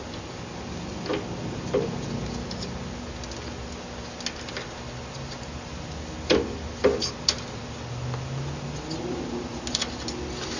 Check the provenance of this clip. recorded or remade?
recorded